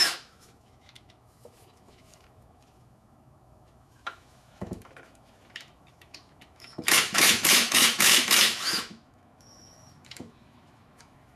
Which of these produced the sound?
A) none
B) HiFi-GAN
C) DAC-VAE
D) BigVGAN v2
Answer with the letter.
C